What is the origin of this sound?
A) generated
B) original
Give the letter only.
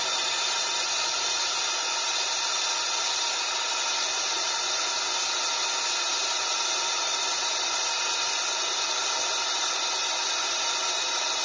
B